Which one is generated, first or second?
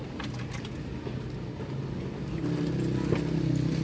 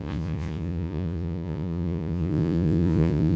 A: second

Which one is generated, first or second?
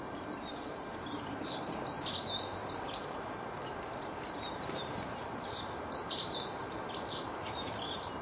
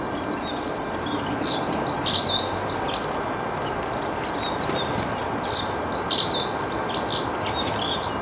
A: first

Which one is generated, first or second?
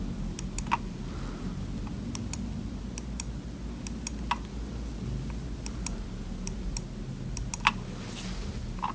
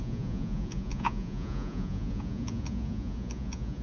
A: second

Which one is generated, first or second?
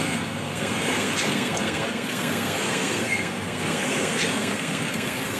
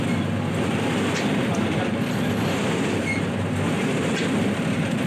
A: first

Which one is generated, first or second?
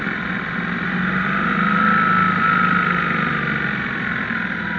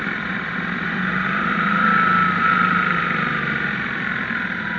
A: second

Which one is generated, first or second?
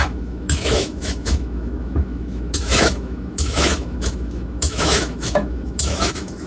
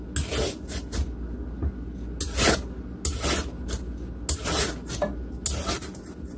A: first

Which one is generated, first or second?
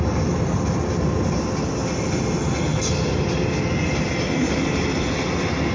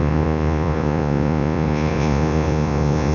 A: second